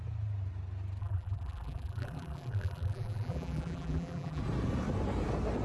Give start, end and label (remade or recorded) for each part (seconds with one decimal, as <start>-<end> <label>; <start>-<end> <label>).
0.0-1.0 recorded; 1.0-4.4 remade; 4.4-5.6 recorded